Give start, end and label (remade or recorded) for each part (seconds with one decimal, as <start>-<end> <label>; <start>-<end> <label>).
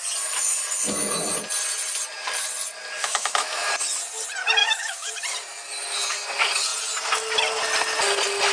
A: 0.0-3.0 recorded; 3.0-3.7 remade; 3.7-4.6 recorded; 4.6-5.1 remade; 5.1-8.5 recorded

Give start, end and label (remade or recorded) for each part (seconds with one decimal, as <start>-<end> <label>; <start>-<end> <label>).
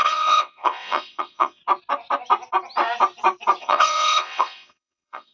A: 0.0-1.6 remade; 1.6-3.6 recorded; 3.6-5.3 remade